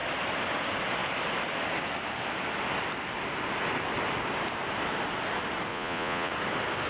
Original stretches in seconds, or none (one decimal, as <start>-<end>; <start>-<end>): 0.0-5.7; 6.3-6.9